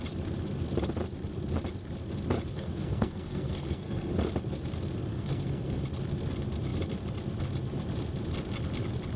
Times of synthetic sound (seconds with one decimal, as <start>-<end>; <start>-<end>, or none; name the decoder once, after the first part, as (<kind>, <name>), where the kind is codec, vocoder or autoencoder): 2.5-4.1 (codec, SNAC); 5.1-5.8